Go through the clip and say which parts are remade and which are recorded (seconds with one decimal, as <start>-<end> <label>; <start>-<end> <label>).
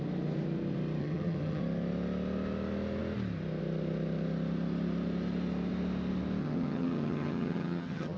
0.0-1.0 recorded; 1.0-1.6 remade; 1.6-6.4 recorded; 6.4-8.2 remade